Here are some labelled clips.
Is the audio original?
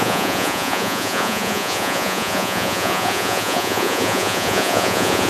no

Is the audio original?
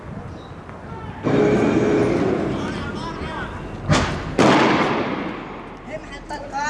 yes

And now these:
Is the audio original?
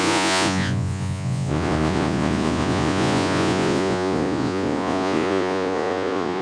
no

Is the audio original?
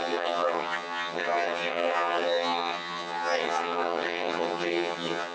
no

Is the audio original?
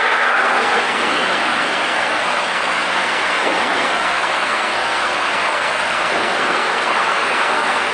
no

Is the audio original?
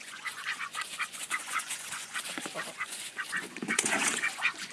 no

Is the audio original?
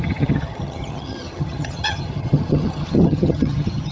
no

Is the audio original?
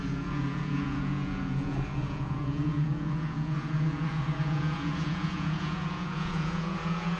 no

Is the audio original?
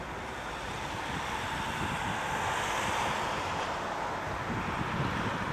yes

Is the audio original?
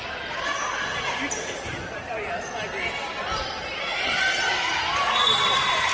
yes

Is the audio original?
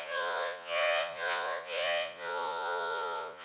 no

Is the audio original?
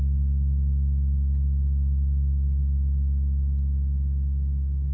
yes